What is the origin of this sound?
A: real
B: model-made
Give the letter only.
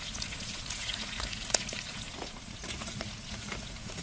B